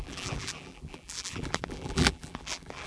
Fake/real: fake